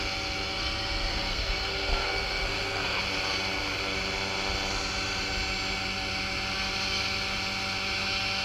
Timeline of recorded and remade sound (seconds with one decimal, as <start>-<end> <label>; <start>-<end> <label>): 0.0-1.1 recorded; 1.1-3.0 remade; 3.0-8.4 recorded